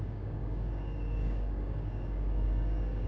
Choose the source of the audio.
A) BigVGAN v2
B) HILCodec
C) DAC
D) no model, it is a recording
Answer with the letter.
C